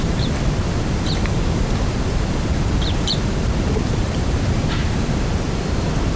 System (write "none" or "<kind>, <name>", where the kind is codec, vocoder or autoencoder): vocoder, BigVGAN v2